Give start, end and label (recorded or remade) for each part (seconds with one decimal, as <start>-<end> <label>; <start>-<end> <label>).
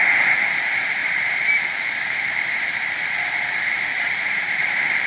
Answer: 0.0-1.0 recorded; 1.0-2.6 remade; 2.6-3.9 recorded; 3.9-5.1 remade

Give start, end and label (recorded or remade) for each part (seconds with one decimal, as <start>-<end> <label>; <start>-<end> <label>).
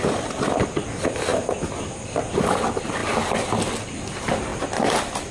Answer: 0.0-5.3 recorded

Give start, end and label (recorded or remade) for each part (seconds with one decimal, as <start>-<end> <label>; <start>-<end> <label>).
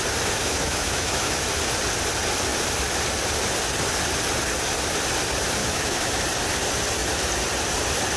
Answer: 0.0-0.4 recorded; 0.4-1.4 remade; 1.4-5.6 recorded; 5.6-6.1 remade; 6.1-8.2 recorded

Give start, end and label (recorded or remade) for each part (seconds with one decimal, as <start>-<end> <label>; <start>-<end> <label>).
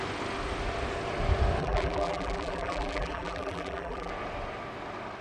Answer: 0.0-1.6 recorded; 1.6-4.1 remade; 4.1-5.2 recorded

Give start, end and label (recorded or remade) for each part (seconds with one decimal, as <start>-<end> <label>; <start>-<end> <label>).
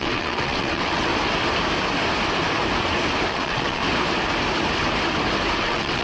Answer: 0.0-1.1 remade; 1.1-3.3 recorded; 3.3-3.8 remade; 3.8-5.6 recorded; 5.6-6.0 remade